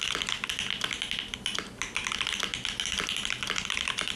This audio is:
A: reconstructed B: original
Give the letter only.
B